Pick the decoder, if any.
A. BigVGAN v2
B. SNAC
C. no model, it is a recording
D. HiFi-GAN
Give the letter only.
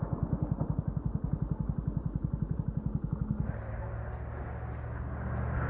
C